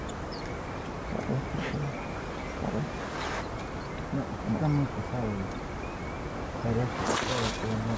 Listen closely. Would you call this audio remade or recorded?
recorded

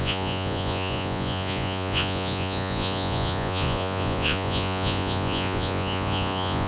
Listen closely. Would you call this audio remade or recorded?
remade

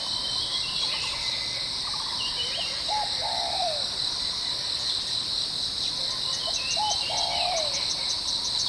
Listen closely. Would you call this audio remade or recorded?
recorded